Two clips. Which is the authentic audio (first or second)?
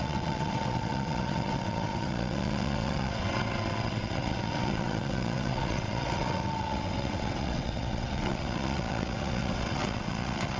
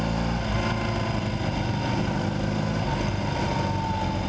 second